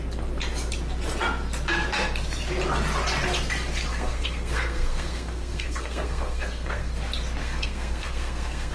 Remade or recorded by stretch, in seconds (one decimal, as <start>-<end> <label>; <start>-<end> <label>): 0.0-3.9 recorded; 3.9-6.9 remade; 6.9-7.4 recorded; 7.4-8.7 remade